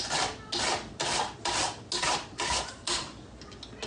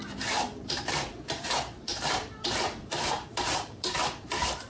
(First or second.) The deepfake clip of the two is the second